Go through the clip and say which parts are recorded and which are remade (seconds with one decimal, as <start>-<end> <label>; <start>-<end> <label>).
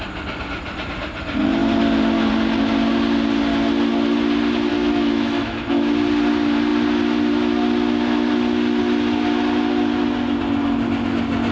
0.0-4.7 recorded; 4.7-5.6 remade; 5.6-11.5 recorded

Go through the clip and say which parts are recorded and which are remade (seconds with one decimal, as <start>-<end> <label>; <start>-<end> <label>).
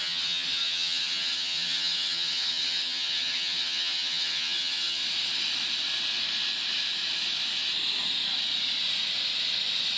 0.0-5.0 remade; 5.0-10.0 recorded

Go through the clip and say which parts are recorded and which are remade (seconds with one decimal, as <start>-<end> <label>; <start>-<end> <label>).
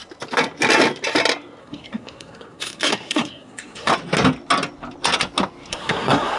0.0-1.6 recorded; 1.6-3.9 remade; 3.9-5.7 recorded; 5.7-6.4 remade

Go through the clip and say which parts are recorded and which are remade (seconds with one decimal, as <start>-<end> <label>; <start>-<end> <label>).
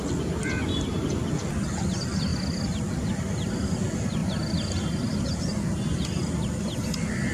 0.0-2.3 recorded; 2.3-3.1 remade; 3.1-4.2 recorded; 4.2-5.3 remade; 5.3-7.3 recorded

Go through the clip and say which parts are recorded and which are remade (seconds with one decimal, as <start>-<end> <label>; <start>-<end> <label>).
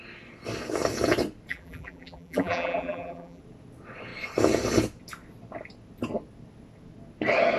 0.0-1.5 recorded; 1.5-3.4 remade; 3.4-7.6 recorded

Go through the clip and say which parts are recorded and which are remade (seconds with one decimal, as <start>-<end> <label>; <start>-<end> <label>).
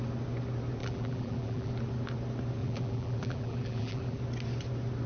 0.0-0.8 recorded; 0.8-1.7 remade; 1.7-2.6 recorded; 2.6-4.2 remade; 4.2-5.1 recorded